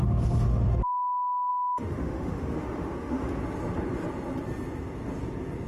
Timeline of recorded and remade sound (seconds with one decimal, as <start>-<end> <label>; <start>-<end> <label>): 0.0-0.8 remade; 0.8-1.5 recorded; 1.5-3.4 remade; 3.4-5.7 recorded